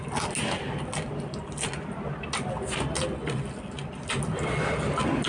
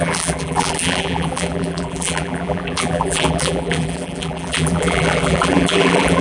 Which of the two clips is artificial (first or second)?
second